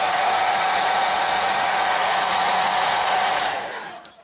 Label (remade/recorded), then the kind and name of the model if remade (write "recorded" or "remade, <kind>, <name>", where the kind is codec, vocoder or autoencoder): remade, vocoder, Vocos